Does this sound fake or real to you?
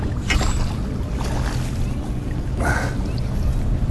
real